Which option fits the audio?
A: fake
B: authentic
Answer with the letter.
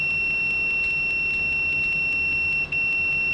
B